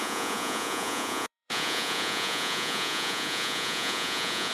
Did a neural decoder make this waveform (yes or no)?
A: yes